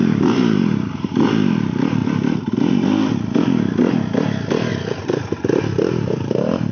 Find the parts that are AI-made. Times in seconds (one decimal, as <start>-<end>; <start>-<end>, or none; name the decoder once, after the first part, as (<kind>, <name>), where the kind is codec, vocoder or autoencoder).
4.7-5.3 (vocoder, BigVGAN v2)